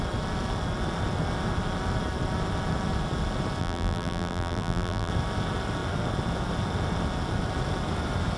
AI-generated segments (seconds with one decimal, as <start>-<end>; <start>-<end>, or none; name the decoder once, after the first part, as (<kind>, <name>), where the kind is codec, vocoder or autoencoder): 3.6-5.1 (vocoder, BigVGAN v2)